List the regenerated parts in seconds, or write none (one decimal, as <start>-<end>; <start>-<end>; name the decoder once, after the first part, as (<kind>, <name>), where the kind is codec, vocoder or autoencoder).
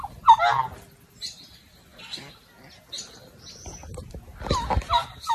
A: none